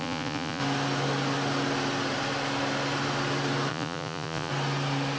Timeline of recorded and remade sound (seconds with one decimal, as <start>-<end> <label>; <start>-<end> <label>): 0.0-0.6 remade; 0.6-3.7 recorded; 3.7-4.5 remade; 4.5-5.2 recorded